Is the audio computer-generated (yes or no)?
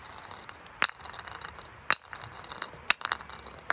no